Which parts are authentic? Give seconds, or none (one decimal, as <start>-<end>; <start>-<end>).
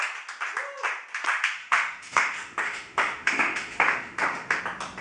0.0-1.6; 4.6-5.0